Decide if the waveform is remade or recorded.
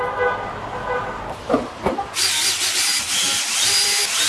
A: recorded